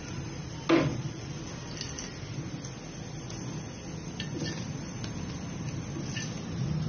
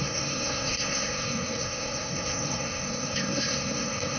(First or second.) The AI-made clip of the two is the second